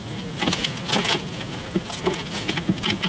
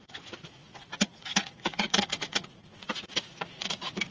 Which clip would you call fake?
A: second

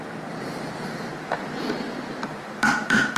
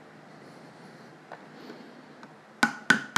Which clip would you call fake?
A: first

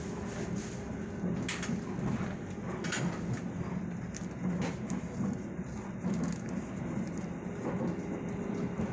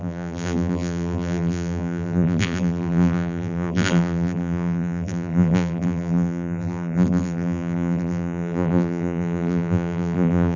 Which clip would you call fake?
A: second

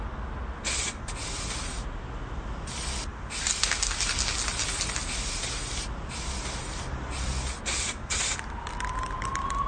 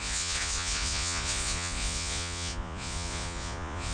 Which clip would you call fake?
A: second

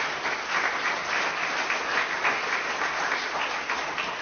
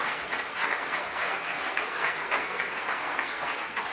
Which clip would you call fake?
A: second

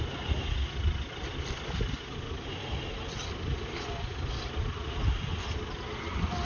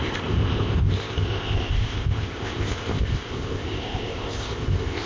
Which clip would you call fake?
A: second